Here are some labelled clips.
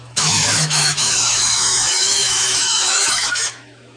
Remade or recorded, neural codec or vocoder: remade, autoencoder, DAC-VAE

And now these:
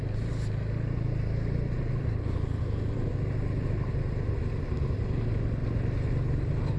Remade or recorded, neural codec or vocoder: recorded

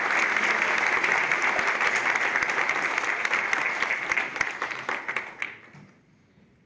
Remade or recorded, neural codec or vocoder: recorded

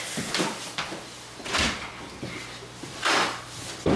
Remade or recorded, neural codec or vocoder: recorded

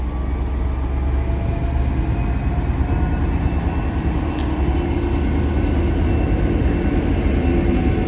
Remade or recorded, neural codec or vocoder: recorded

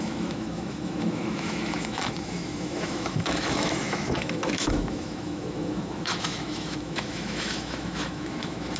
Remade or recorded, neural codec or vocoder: remade, autoencoder, DAC-VAE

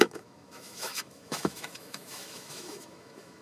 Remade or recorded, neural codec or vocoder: remade, autoencoder, DAC-VAE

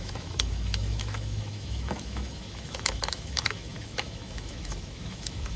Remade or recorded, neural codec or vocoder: remade, autoencoder, DAC-VAE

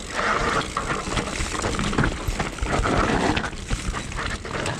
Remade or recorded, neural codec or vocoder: recorded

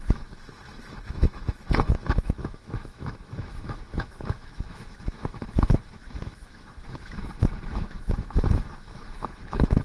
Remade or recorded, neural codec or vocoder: remade, autoencoder, DAC-VAE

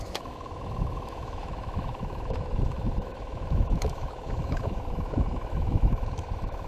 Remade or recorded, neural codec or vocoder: remade, autoencoder, DAC-VAE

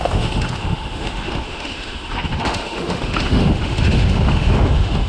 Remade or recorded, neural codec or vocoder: remade, autoencoder, DAC-VAE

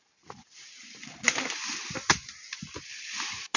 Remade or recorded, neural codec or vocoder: recorded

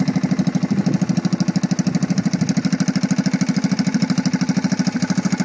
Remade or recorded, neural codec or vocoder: recorded